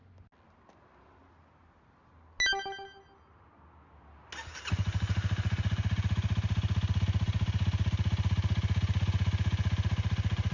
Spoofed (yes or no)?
no